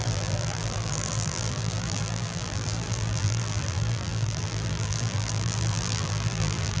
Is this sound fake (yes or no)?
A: yes